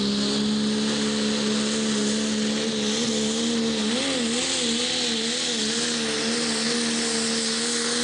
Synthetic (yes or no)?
no